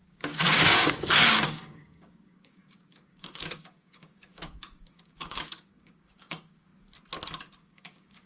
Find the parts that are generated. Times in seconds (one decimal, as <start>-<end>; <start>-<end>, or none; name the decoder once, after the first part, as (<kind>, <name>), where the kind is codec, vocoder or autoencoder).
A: 0.0-6.7 (codec, DAC); 7.6-8.3